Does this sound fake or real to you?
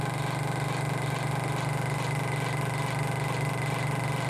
real